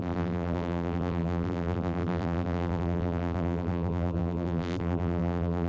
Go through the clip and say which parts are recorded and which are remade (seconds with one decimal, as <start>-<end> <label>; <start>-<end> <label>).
0.0-5.7 remade